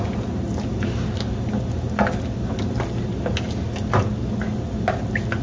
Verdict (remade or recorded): recorded